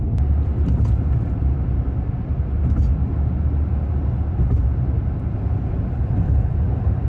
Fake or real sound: real